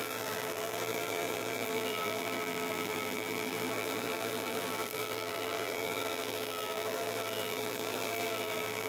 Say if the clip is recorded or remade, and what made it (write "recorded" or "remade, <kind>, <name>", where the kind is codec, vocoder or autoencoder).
remade, vocoder, BigVGAN v2